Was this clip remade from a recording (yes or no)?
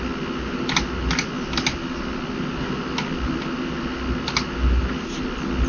no